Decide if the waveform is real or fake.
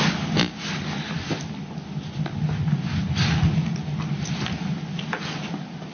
real